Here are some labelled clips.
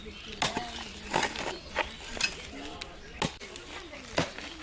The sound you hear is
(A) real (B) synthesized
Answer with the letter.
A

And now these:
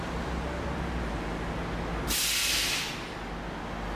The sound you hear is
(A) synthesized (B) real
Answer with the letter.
B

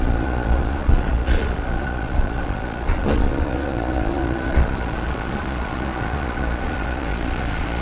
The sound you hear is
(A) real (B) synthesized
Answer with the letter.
B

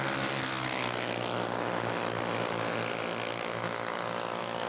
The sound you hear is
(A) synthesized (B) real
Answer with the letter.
B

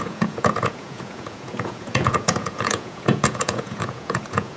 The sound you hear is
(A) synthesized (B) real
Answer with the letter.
A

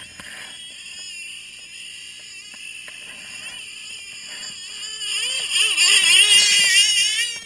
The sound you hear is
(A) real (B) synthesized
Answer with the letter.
A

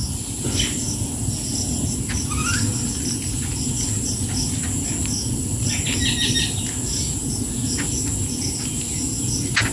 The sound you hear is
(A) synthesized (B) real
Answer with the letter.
B